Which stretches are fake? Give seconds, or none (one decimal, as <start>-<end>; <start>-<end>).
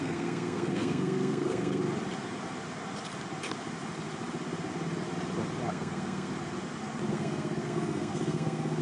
0.0-1.8; 5.7-6.3; 7.1-8.8